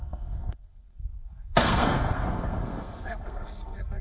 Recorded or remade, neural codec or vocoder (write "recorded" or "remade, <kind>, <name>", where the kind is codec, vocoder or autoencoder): remade, codec, SNAC